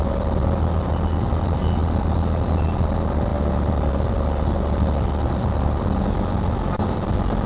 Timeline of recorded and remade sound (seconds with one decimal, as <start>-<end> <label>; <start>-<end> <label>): 0.0-7.5 recorded